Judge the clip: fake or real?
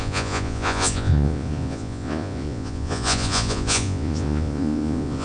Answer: fake